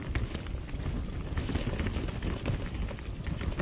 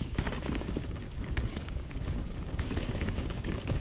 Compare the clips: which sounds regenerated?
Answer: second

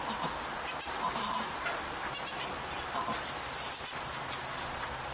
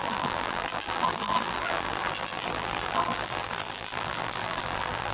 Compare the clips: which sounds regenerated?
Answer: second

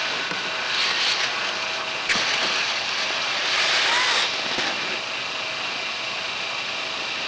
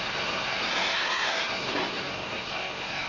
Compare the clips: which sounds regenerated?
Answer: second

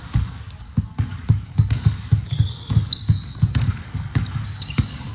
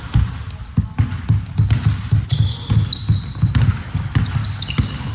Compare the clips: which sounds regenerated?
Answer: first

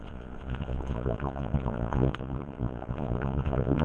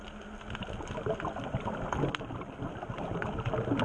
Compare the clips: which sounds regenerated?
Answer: first